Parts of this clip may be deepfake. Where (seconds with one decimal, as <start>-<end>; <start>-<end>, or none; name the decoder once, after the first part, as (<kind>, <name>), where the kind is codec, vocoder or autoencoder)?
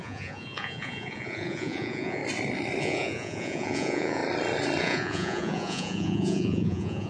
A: 0.0-2.2 (vocoder, Vocos); 2.8-4.2; 4.8-7.1